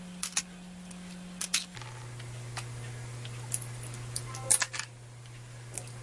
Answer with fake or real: real